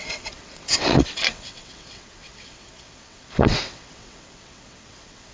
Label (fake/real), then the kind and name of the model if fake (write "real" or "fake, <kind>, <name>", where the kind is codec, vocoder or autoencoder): fake, vocoder, WaveNeXt